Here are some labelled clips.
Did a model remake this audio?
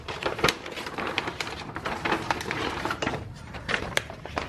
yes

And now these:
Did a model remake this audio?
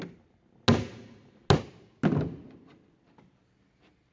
no